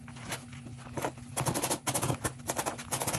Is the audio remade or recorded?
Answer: recorded